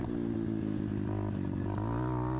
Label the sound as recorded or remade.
recorded